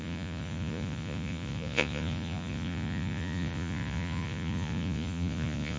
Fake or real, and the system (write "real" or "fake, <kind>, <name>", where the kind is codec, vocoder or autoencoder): fake, vocoder, Vocos